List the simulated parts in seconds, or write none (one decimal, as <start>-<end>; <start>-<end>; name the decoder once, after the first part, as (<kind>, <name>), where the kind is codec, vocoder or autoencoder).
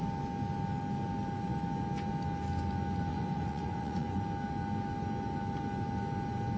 3.1-4.2 (vocoder, Vocos)